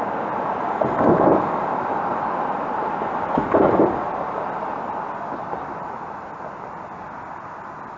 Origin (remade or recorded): recorded